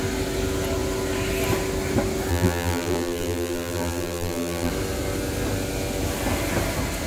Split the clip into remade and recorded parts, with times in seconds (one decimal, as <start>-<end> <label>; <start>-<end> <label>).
0.0-2.3 recorded; 2.3-4.7 remade; 4.7-7.1 recorded